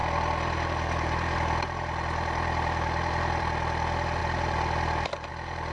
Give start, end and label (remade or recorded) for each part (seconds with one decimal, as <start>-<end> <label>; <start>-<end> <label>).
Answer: 0.0-3.4 remade; 3.4-5.7 recorded